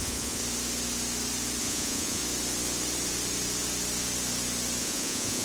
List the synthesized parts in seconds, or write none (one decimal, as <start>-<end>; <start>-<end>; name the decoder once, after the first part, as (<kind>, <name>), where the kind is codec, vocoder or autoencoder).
0.0-0.4 (vocoder, Vocos); 1.6-2.2; 4.8-5.4